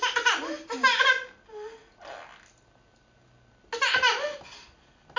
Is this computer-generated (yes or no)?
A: no